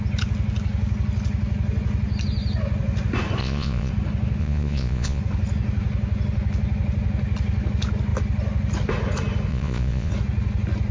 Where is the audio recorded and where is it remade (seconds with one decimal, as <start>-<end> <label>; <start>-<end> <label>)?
0.0-3.4 recorded; 3.4-3.9 remade; 3.9-4.4 recorded; 4.4-5.2 remade; 5.2-9.5 recorded; 9.5-10.1 remade; 10.1-10.9 recorded